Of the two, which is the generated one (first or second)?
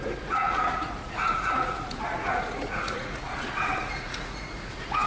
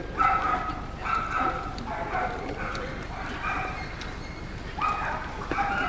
first